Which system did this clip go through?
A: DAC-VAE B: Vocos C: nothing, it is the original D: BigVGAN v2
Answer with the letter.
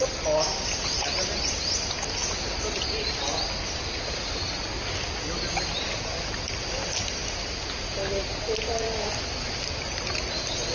C